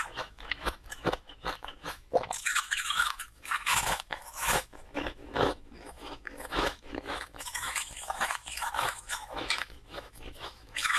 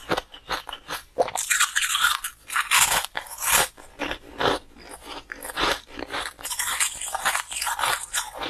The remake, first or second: first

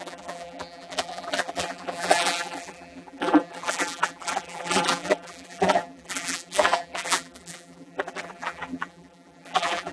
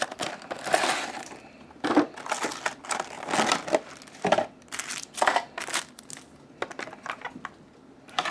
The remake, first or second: first